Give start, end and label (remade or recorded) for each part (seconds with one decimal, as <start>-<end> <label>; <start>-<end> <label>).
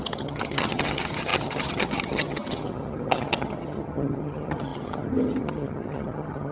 0.0-6.5 remade